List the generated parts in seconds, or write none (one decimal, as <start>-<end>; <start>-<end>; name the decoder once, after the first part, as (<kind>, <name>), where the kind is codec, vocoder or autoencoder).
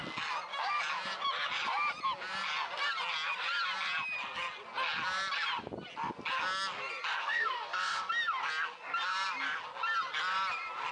7.2-8.1 (codec, SNAC)